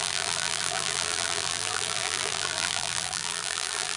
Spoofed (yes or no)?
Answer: yes